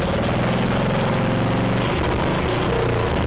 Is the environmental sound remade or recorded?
recorded